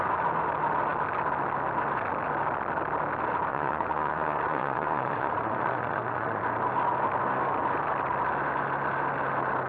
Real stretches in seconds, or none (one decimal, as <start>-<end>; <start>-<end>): 0.0-3.5; 6.4-9.7